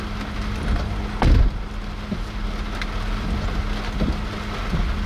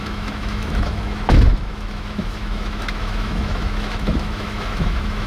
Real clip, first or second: first